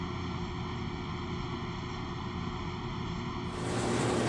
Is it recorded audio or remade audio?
recorded